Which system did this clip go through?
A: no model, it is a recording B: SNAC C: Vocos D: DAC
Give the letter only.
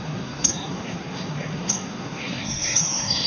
B